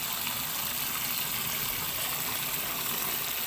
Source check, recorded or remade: recorded